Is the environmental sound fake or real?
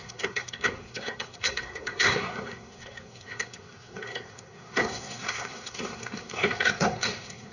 fake